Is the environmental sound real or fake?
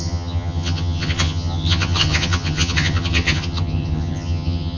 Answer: fake